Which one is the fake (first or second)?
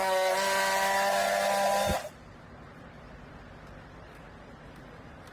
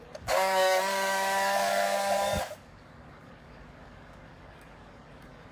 second